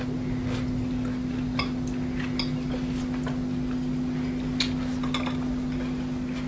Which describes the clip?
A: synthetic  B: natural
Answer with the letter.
B